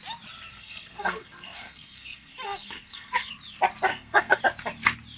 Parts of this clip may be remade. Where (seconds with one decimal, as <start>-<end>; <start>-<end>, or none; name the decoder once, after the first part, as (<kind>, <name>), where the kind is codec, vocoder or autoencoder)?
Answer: 0.5-3.3 (codec, SNAC); 3.9-4.4